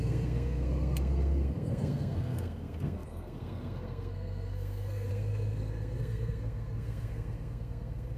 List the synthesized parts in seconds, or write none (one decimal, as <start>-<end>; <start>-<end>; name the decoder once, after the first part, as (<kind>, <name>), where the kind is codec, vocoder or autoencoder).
0.0-8.2 (codec, SNAC)

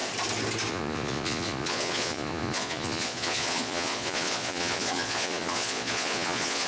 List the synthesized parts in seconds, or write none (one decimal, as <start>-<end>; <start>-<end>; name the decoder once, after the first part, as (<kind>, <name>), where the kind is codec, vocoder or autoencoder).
0.7-6.7 (vocoder, Vocos)

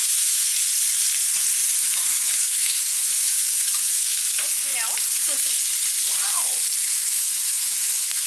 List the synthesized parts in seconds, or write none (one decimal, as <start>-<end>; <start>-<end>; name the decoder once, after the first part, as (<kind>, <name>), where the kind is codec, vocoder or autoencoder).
0.0-0.5 (autoencoder, DAC-VAE); 1.7-4.7; 6.8-8.3